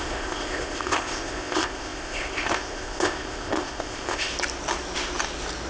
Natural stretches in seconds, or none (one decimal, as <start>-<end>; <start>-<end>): 4.3-5.7